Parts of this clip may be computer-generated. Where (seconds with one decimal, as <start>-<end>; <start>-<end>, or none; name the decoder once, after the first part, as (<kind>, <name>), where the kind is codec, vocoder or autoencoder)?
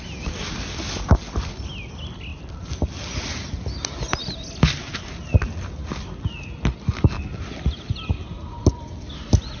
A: none